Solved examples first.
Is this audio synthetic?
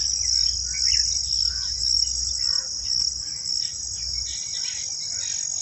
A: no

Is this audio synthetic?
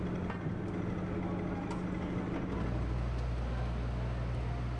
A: no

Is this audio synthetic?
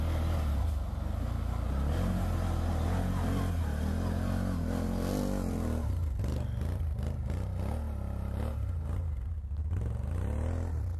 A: no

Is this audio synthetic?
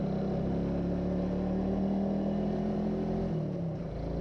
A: no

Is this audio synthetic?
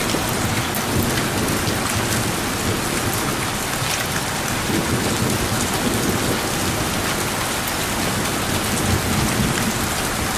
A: no